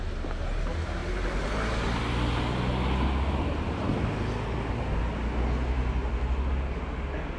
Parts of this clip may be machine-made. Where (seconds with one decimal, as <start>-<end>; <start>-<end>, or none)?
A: none